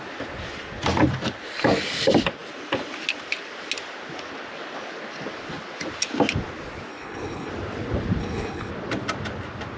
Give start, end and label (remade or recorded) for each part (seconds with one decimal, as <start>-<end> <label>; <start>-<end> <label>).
0.0-6.9 recorded; 6.9-7.5 remade; 7.5-8.2 recorded; 8.2-8.7 remade; 8.7-9.8 recorded